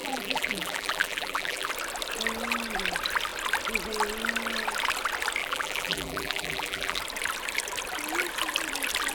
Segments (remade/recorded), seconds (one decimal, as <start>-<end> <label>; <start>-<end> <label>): 0.0-1.7 remade; 1.7-5.4 recorded; 5.4-7.0 remade; 7.0-9.1 recorded